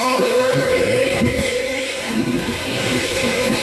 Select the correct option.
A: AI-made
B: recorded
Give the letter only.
A